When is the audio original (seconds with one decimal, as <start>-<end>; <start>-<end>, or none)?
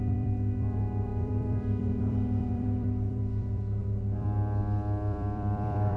none